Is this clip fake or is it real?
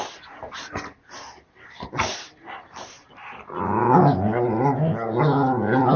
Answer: real